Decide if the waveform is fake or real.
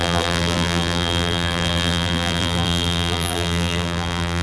fake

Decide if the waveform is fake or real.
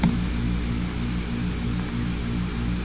real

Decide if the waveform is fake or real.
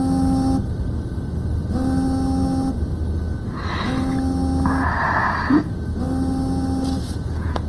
real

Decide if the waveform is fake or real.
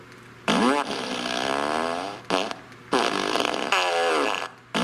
real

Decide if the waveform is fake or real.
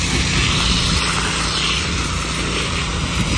real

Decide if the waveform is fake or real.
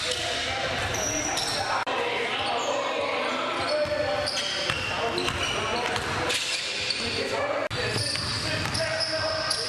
real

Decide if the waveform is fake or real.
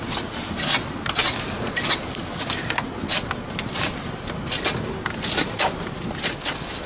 real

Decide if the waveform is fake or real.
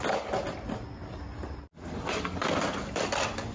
real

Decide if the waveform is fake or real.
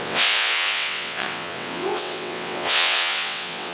fake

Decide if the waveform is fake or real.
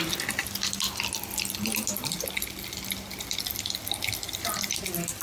real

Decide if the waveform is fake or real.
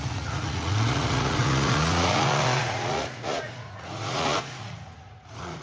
fake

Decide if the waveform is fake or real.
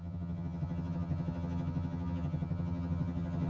fake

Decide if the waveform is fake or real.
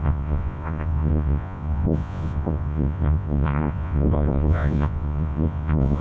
fake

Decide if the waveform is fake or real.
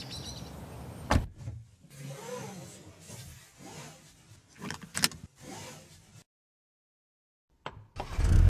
real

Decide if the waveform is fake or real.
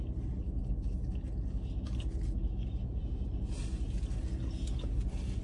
real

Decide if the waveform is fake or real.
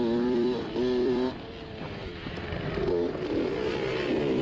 fake